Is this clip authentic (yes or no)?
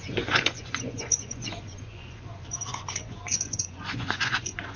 no